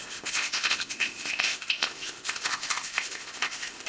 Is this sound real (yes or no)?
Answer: no